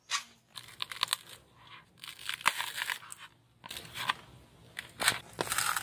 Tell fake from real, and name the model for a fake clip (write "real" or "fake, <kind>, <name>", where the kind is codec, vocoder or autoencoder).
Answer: real